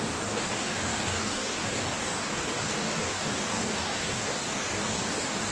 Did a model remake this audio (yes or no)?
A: yes